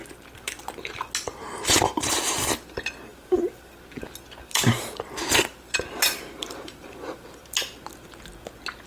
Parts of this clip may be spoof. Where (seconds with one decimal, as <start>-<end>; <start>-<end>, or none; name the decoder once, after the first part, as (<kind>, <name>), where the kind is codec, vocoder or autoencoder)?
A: 1.4-2.1 (vocoder, BigVGAN v2); 3.1-3.7; 4.5-7.4